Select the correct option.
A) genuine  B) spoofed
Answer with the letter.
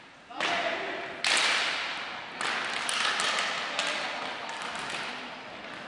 A